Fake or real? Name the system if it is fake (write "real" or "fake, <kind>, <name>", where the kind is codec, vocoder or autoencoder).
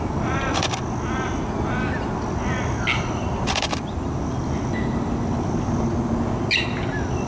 real